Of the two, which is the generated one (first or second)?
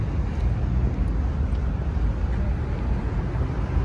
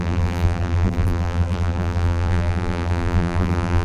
second